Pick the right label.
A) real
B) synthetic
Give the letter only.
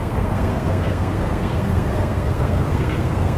B